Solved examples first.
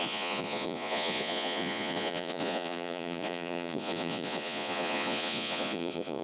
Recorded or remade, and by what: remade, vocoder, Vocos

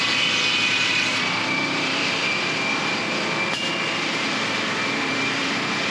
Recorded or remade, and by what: remade, vocoder, BigVGAN v2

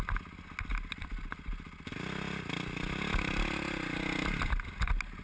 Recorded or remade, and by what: recorded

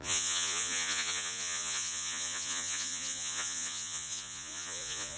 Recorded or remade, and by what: remade, vocoder, Vocos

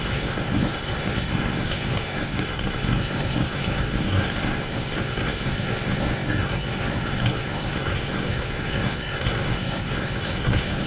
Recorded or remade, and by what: remade, codec, SNAC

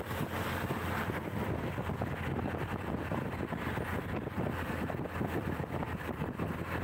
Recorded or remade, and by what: recorded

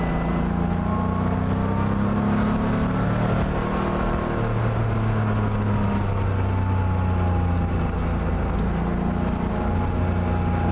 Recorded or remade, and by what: recorded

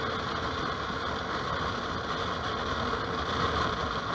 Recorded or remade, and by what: recorded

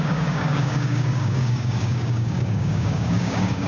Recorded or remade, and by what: remade, codec, DAC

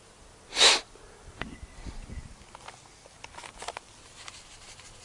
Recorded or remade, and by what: recorded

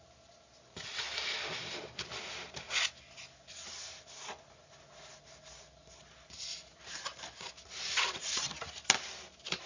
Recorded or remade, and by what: recorded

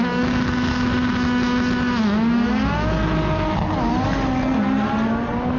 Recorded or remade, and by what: recorded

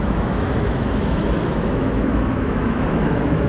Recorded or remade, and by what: remade, autoencoder, DAC-VAE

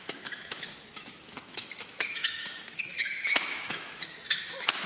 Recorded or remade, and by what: remade, autoencoder, DAC-VAE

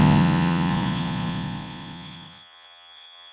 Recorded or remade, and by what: remade, vocoder, Vocos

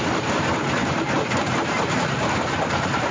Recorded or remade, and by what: remade, vocoder, BigVGAN v2